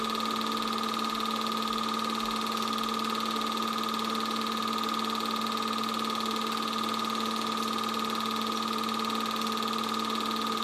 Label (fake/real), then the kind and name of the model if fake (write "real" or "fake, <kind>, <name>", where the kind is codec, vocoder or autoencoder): real